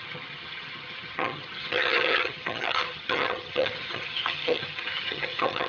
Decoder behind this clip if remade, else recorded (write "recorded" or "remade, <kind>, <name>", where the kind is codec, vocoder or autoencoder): remade, vocoder, HiFi-GAN